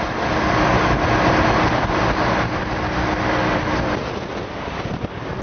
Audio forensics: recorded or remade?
recorded